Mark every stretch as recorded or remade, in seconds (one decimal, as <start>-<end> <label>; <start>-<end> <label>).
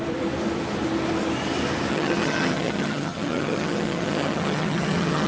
0.0-1.9 recorded; 1.9-5.3 remade